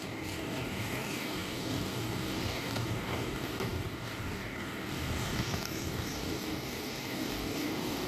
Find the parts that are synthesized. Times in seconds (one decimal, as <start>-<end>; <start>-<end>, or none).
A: 0.0-8.1